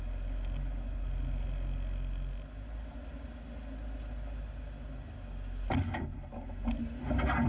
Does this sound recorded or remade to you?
recorded